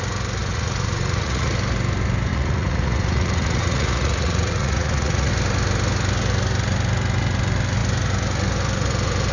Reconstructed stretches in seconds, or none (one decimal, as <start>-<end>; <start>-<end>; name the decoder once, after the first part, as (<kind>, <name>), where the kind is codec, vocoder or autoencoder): 0.4-1.5 (vocoder, Vocos); 2.3-5.3